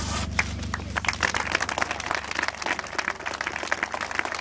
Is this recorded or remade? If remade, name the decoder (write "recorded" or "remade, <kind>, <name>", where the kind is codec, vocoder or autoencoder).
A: recorded